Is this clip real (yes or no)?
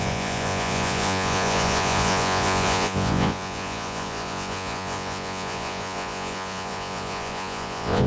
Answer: no